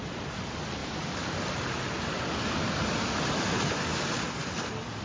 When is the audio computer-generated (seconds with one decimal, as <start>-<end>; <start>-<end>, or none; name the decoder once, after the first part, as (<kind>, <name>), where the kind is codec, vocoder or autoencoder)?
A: none